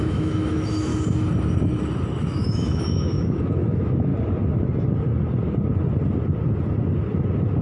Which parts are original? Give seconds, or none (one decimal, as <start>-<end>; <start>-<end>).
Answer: 0.9-2.2; 4.1-7.6